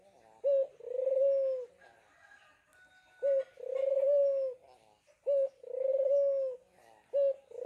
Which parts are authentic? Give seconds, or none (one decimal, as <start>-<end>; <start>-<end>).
0.0-7.7